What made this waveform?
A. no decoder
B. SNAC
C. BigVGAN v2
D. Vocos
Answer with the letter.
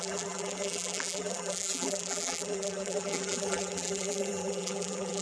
C